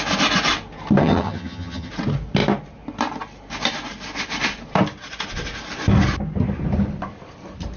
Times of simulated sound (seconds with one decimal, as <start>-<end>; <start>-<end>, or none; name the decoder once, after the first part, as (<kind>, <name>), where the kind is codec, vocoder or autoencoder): 1.0-1.9 (vocoder, HiFi-GAN)